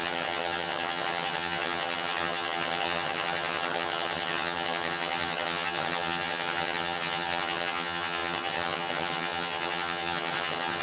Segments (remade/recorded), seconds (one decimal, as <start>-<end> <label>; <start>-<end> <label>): 0.0-10.8 remade